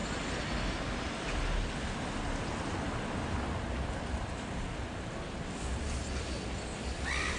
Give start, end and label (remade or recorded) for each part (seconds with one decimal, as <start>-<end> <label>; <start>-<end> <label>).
0.0-7.4 recorded